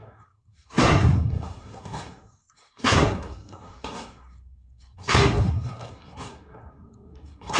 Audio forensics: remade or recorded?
remade